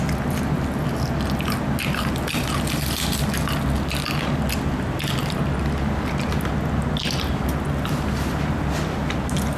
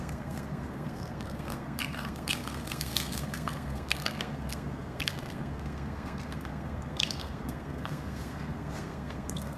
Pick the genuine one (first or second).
first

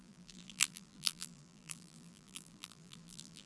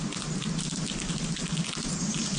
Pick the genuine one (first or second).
second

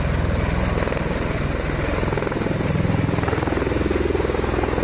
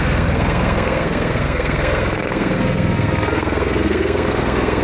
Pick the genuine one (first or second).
first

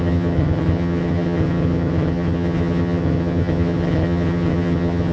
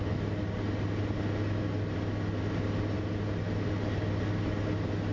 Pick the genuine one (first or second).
second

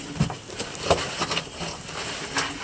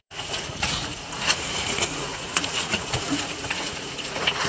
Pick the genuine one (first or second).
first